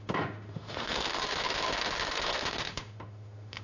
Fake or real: fake